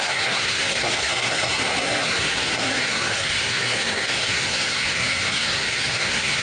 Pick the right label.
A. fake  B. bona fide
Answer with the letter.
A